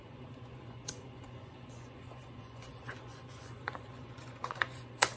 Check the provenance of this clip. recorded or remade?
remade